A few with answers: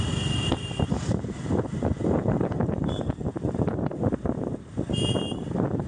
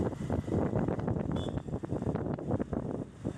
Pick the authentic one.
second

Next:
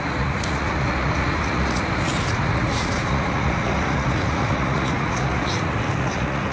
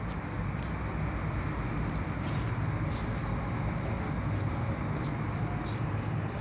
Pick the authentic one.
second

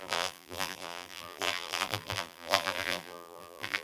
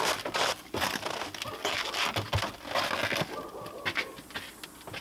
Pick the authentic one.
second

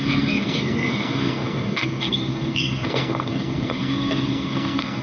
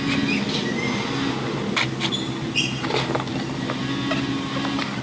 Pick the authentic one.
second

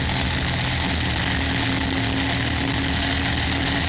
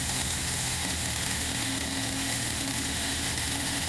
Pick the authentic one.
first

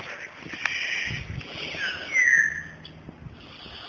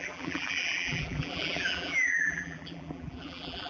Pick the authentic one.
first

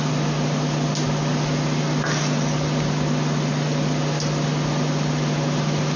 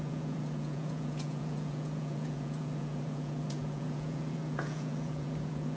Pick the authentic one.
first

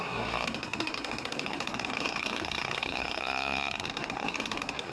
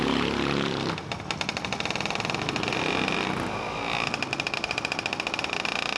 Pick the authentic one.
second